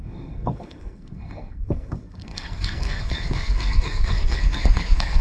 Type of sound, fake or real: fake